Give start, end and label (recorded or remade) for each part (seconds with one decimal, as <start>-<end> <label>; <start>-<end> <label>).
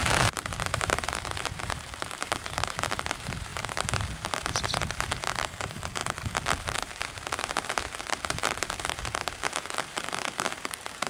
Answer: 0.0-6.0 remade; 6.0-6.6 recorded; 6.6-11.1 remade